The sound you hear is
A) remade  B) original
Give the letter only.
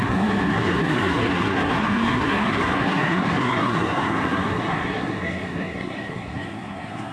A